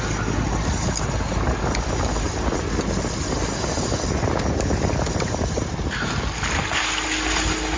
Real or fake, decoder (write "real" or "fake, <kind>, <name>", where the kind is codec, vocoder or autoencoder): real